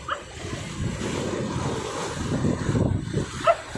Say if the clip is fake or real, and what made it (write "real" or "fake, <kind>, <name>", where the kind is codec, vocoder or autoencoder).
real